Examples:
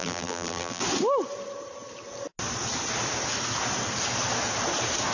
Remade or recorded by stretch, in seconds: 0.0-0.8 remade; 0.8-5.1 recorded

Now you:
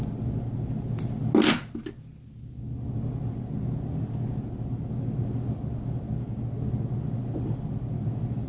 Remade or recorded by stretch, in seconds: 0.0-8.5 recorded

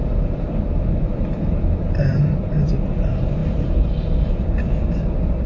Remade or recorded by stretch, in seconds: 0.0-2.6 remade; 2.6-5.5 recorded

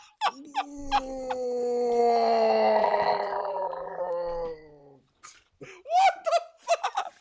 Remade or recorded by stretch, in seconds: 0.0-2.8 recorded; 2.8-4.0 remade; 4.0-7.2 recorded

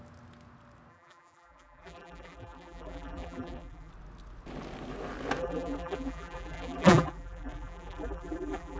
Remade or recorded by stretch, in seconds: 0.0-0.9 recorded; 0.9-3.9 remade; 3.9-5.4 recorded; 5.4-8.8 remade

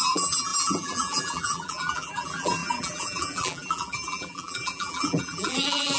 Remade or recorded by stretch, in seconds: 0.0-6.0 remade